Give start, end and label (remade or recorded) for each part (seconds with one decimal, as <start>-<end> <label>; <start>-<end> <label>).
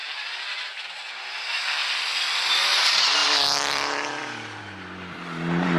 0.0-1.8 recorded; 1.8-2.5 remade; 2.5-3.2 recorded; 3.2-4.6 remade; 4.6-5.8 recorded